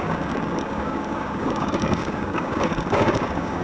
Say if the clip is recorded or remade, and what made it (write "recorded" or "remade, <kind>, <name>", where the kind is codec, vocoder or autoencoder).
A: remade, codec, DAC